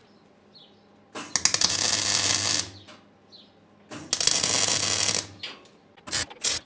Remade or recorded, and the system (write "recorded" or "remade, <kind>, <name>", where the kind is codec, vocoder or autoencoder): recorded